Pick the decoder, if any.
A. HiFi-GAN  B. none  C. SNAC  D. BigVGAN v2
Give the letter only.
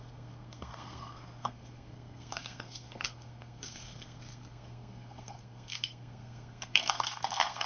C